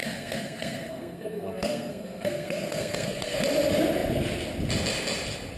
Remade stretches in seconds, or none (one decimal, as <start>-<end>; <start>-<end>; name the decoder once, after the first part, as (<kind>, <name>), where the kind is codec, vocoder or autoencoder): 0.0-3.4 (codec, SNAC)